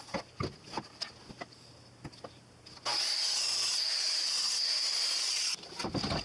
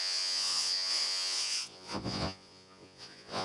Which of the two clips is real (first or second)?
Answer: first